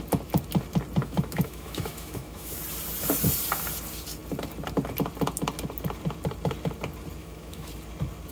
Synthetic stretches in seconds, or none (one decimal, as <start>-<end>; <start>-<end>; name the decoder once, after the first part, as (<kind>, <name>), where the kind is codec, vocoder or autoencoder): 1.0-2.6 (autoencoder, DAC-VAE); 7.2-7.7